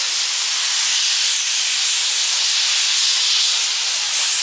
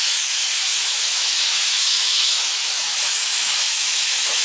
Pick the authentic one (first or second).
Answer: first